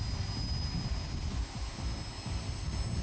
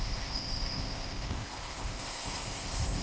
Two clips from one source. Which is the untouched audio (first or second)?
first